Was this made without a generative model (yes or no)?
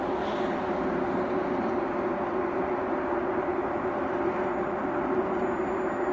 yes